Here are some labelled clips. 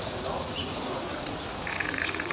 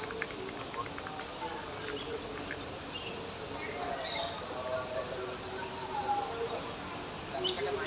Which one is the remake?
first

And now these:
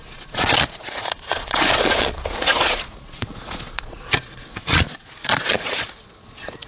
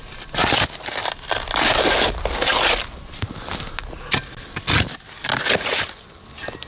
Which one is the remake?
first